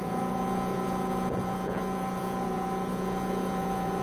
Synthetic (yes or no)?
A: yes